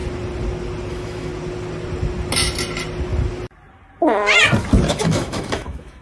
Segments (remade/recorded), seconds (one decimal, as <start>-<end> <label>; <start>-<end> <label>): 0.0-0.9 recorded; 0.9-1.3 remade; 1.3-4.9 recorded; 4.9-6.0 remade